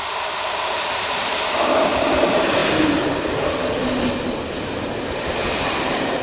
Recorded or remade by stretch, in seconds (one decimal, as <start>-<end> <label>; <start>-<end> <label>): 0.0-2.6 remade; 2.6-5.1 recorded; 5.1-6.2 remade